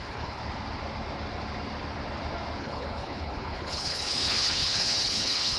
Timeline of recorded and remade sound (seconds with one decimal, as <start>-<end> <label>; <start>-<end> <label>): 0.0-0.4 remade; 0.4-2.6 recorded; 2.6-5.6 remade